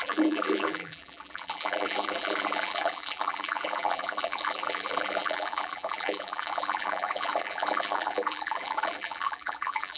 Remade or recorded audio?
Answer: remade